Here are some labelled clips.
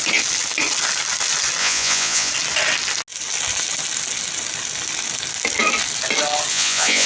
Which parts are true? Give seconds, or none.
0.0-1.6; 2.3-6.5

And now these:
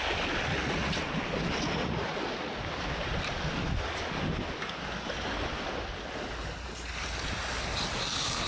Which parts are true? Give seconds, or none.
0.0-0.5; 1.0-1.8; 2.6-8.5

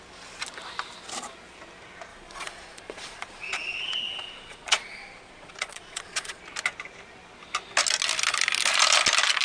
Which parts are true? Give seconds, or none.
0.0-2.1; 6.4-9.4